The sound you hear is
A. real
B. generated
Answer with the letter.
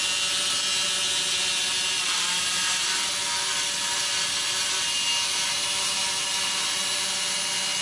A